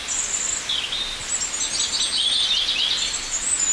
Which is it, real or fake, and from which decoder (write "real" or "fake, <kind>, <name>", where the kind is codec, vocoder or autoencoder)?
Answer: real